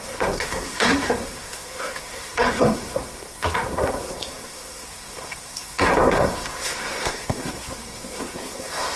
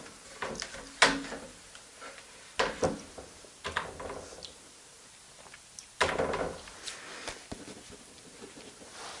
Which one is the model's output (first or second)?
first